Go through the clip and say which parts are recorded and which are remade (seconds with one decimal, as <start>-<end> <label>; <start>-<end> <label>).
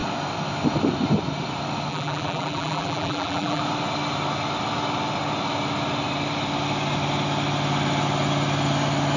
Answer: 0.0-1.9 recorded; 1.9-3.6 remade; 3.6-9.2 recorded